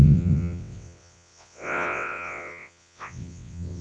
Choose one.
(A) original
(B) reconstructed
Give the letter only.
B